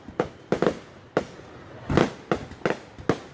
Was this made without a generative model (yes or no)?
yes